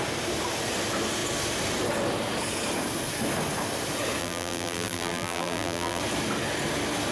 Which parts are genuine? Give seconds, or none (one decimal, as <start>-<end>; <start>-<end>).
0.0-4.2; 6.0-7.1